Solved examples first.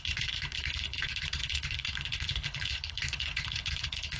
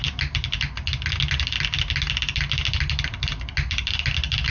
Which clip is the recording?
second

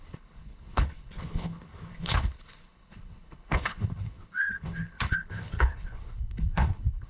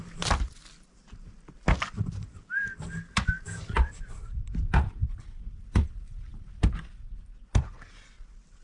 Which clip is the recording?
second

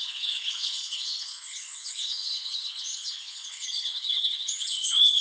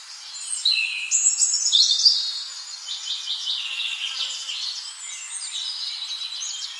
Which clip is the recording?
second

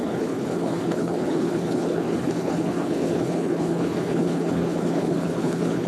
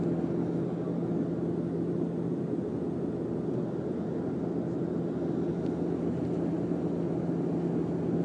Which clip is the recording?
second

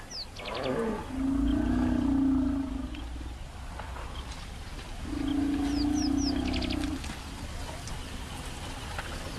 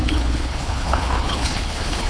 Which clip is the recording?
first